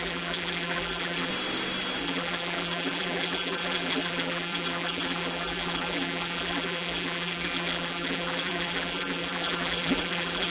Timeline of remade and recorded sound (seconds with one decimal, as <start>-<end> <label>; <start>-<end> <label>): 0.0-1.3 remade; 1.3-2.0 recorded; 2.0-10.5 remade